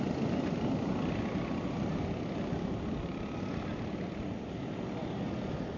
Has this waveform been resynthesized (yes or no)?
no